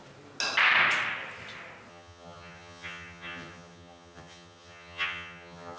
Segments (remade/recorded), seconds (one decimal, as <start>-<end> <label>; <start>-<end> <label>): 0.0-1.9 recorded; 1.9-5.8 remade